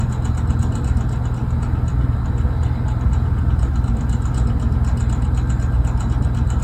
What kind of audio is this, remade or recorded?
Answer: recorded